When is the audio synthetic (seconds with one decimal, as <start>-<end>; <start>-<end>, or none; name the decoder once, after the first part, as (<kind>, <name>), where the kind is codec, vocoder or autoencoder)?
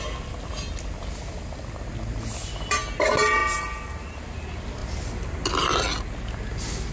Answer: none